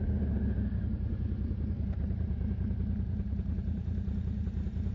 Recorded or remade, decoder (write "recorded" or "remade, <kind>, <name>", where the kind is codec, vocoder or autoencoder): remade, vocoder, BigVGAN v2